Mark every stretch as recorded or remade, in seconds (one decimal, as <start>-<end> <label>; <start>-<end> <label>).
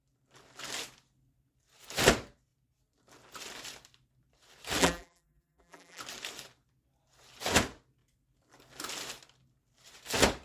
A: 0.0-4.8 recorded; 4.8-6.0 remade; 6.0-10.4 recorded